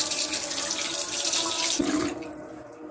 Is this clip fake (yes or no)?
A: no